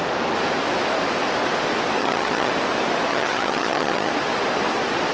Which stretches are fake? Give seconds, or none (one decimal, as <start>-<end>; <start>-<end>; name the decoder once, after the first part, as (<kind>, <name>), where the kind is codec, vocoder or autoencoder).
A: 2.0-2.5 (vocoder, HiFi-GAN); 3.1-4.1